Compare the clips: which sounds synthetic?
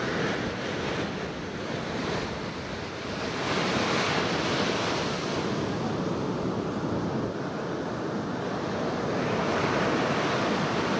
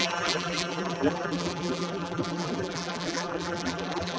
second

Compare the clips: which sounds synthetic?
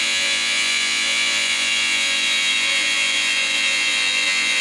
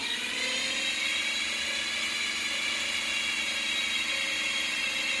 first